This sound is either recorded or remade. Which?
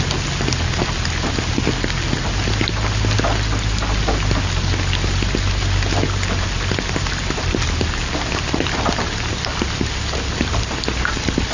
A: recorded